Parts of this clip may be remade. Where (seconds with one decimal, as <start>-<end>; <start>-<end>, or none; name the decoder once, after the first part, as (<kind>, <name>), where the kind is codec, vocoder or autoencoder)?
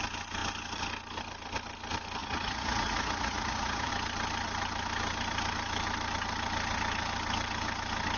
2.2-3.9 (vocoder, Vocos)